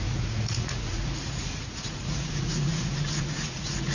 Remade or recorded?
remade